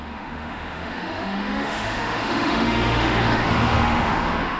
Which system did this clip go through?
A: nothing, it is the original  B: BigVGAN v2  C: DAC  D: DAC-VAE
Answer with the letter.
D